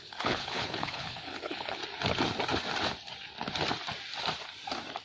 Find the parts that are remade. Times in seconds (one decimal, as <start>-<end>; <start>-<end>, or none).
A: 0.0-1.8